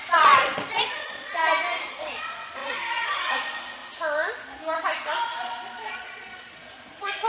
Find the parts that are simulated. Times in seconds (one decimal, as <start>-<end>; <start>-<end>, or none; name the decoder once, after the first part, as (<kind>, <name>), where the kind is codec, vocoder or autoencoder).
0.0-1.4 (vocoder, Vocos); 1.9-3.8; 5.4-7.3